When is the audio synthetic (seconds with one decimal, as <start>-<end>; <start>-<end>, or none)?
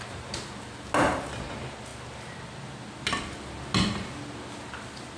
none